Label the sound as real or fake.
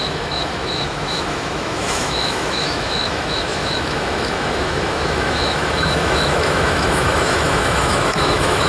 fake